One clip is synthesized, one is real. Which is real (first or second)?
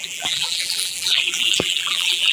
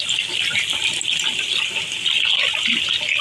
second